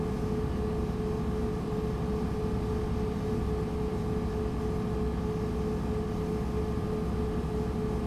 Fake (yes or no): no